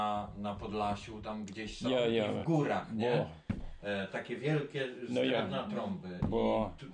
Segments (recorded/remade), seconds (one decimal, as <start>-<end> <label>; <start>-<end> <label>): 0.0-6.9 recorded